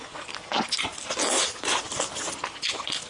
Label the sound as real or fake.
real